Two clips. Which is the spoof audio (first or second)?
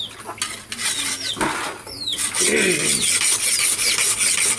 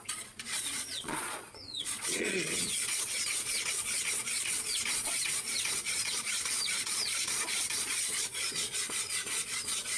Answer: second